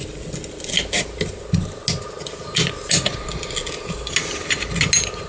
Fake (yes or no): no